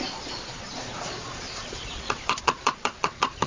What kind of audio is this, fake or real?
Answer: fake